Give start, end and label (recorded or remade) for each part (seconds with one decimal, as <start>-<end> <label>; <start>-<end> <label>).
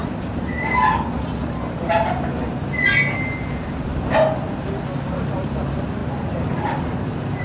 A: 0.0-7.4 recorded